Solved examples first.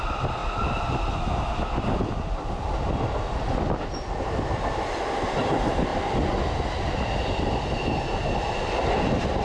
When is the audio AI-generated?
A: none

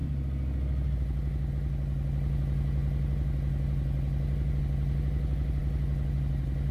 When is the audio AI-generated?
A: none

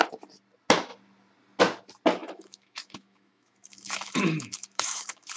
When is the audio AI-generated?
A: 2.2-5.4 (autoencoder, DAC-VAE)

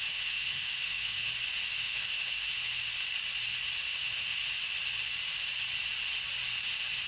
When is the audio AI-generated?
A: 0.0-1.3 (autoencoder, DAC-VAE); 1.8-2.5; 3.9-4.4

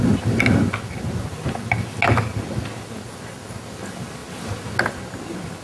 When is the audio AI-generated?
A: none

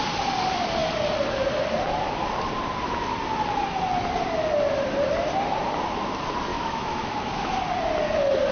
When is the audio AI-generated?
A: 6.5-7.5 (autoencoder, DAC-VAE)